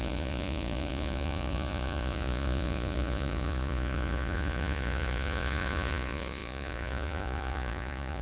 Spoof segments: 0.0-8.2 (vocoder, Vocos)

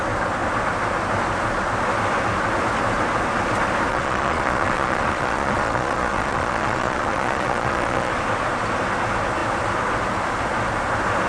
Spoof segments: 3.9-8.1 (vocoder, Vocos)

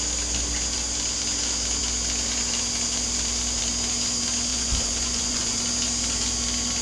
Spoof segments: 4.5-5.6 (vocoder, Vocos)